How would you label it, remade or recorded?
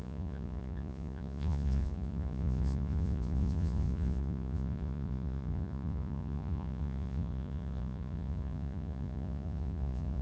remade